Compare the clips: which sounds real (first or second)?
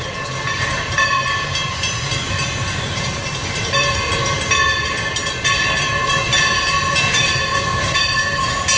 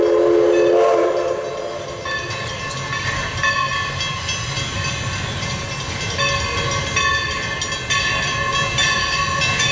second